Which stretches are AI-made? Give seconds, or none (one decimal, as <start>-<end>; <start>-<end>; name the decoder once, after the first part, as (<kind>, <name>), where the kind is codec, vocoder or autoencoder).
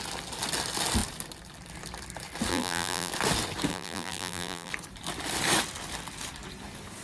2.5-3.1 (vocoder, BigVGAN v2); 3.7-4.7